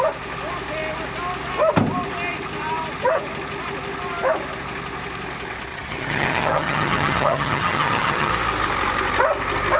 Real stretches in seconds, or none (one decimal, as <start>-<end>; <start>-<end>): 0.0-5.7; 8.3-9.8